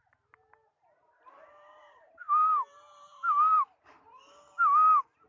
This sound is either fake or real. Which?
real